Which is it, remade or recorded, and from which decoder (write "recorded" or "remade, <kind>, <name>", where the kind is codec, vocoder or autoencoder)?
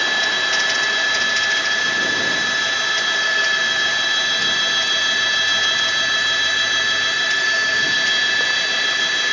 remade, vocoder, BigVGAN v2